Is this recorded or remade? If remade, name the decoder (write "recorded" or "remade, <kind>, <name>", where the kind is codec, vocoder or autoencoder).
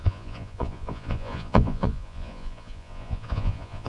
remade, vocoder, Vocos